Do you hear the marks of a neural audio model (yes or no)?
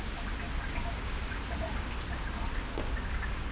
no